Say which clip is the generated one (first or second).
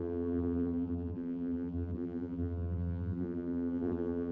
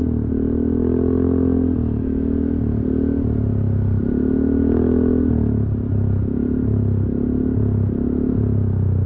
first